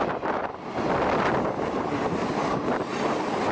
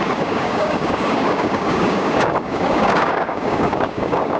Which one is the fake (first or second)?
second